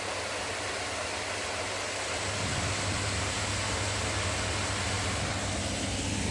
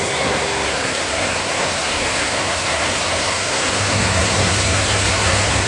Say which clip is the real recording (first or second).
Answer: first